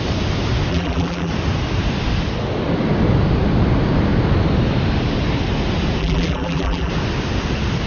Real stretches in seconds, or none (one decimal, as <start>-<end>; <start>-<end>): 0.0-0.7; 1.3-6.0; 6.9-7.9

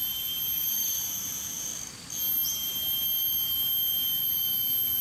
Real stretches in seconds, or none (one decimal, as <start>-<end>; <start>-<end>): 1.7-2.3

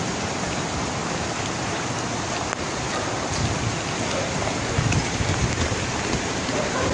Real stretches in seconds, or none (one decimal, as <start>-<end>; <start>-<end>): 0.0-6.9